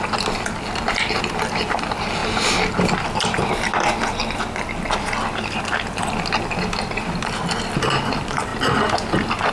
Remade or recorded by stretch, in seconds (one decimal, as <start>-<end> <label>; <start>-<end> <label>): 0.0-9.5 recorded